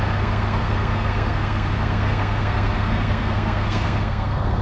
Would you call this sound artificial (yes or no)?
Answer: yes